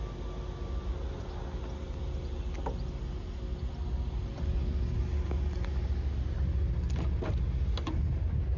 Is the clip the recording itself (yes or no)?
yes